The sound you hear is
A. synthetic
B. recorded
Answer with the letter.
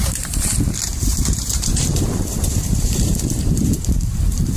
A